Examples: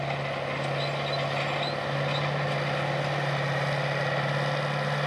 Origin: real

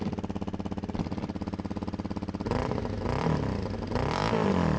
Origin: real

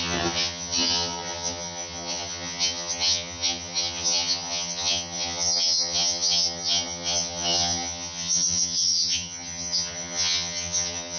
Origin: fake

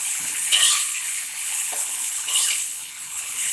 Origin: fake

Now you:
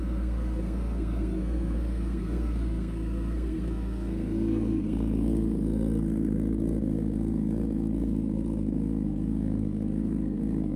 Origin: fake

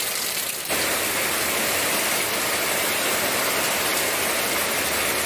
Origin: real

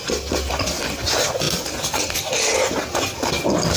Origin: real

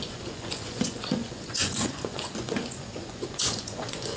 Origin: fake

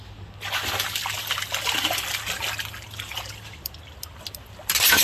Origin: real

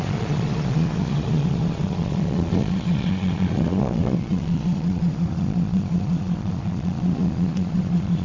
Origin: fake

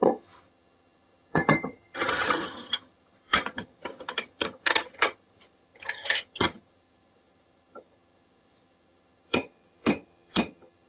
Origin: fake